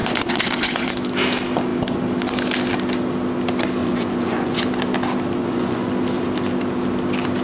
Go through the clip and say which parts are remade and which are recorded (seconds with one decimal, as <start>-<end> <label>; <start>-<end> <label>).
0.0-0.9 remade; 0.9-3.8 recorded; 3.8-4.6 remade; 4.6-5.4 recorded; 5.4-5.9 remade; 5.9-7.4 recorded